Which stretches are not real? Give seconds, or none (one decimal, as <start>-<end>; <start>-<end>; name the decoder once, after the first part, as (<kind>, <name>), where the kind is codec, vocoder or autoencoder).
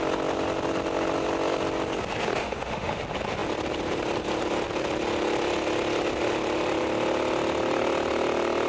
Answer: 2.4-3.0 (autoencoder, DAC-VAE)